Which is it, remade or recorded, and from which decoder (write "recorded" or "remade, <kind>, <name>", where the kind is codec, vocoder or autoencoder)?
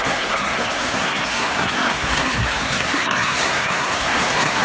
remade, codec, SNAC